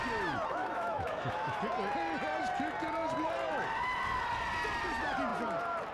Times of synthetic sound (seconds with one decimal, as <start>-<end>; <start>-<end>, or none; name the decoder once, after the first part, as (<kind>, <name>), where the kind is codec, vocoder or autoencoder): 0.6-1.6 (autoencoder, DAC-VAE)